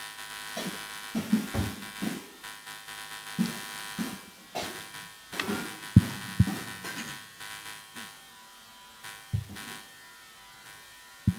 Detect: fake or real real